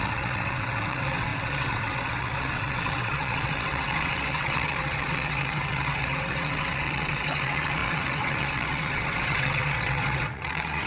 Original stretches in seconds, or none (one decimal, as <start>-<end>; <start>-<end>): none